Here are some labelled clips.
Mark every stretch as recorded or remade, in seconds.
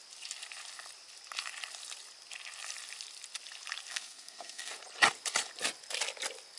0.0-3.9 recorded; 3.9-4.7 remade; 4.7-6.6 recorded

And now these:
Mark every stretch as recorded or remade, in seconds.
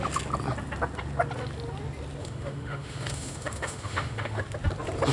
0.0-2.2 recorded; 2.2-4.4 remade; 4.4-5.1 recorded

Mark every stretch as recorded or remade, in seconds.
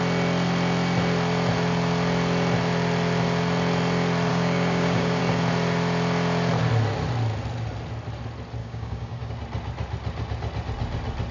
0.0-4.3 recorded; 4.3-5.2 remade; 5.2-8.6 recorded; 8.6-9.3 remade; 9.3-11.3 recorded